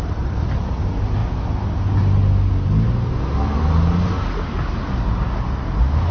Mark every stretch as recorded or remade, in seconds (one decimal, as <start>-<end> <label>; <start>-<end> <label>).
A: 0.0-6.1 recorded